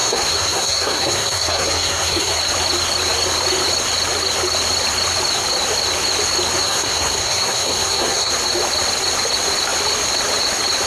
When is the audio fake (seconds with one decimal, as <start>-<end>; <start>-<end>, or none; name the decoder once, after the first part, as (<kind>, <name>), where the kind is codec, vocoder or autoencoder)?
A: 0.0-2.4 (codec, SNAC); 6.6-8.3

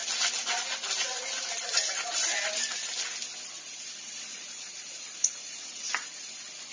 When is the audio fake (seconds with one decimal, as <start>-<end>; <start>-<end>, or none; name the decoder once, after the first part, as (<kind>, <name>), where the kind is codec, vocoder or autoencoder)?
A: 4.3-6.3 (vocoder, Vocos)

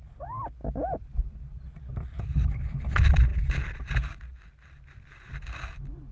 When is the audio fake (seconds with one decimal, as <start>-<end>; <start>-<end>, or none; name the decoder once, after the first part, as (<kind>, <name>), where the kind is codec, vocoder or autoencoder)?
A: none

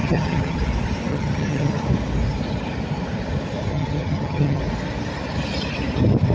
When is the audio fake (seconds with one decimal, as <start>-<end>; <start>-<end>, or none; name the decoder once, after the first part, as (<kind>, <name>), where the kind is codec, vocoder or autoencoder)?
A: 0.0-0.6 (vocoder, HiFi-GAN); 1.1-1.7; 3.7-4.6

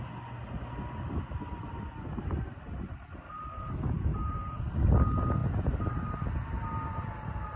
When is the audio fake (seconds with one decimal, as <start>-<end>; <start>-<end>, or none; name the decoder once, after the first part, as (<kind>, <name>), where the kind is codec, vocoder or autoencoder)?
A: 4.1-4.6 (vocoder, BigVGAN v2)

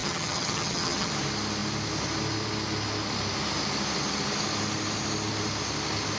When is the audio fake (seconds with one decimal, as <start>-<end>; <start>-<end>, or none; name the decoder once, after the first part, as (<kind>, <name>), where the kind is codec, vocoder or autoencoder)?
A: 0.0-1.1 (vocoder, HiFi-GAN)